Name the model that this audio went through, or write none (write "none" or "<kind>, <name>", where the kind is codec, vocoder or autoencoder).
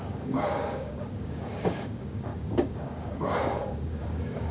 codec, DAC